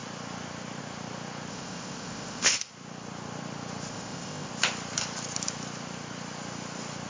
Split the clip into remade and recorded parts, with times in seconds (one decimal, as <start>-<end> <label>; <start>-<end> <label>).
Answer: 0.0-1.5 recorded; 1.5-2.7 remade; 2.7-3.9 recorded; 3.9-4.5 remade; 4.5-7.1 recorded